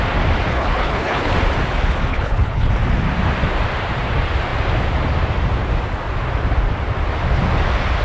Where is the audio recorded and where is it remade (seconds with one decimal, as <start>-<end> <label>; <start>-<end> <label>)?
0.0-0.5 recorded; 0.5-1.3 remade; 1.3-2.1 recorded; 2.1-2.7 remade; 2.7-8.0 recorded